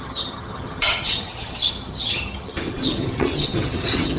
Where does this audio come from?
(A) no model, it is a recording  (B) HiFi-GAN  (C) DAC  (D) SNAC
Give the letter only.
B